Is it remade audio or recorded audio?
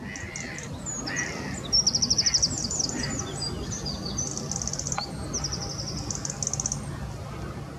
recorded